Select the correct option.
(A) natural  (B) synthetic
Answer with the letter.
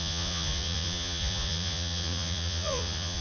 B